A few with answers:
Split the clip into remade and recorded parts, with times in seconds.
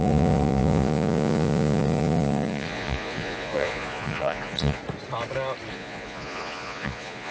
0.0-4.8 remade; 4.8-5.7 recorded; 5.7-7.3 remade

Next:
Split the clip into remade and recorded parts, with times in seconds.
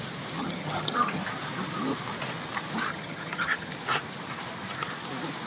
0.0-0.4 recorded; 0.4-1.2 remade; 1.2-2.9 recorded; 2.9-3.7 remade; 3.7-5.5 recorded